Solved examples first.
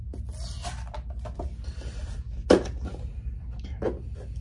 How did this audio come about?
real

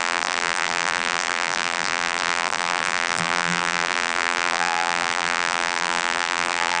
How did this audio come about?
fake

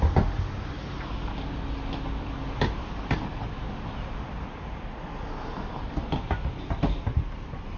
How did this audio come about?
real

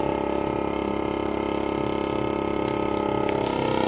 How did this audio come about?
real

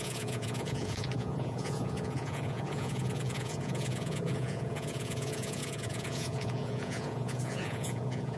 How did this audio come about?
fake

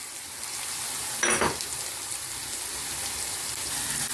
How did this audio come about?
real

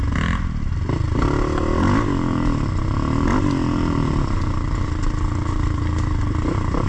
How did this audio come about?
real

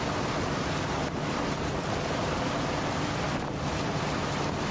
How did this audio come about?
real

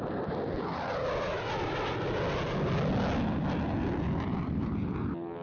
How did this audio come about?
real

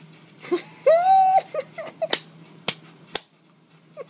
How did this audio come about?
real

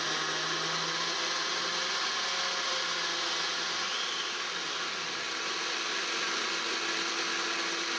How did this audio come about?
real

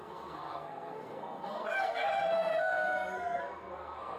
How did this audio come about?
fake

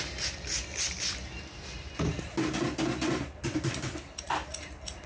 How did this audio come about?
real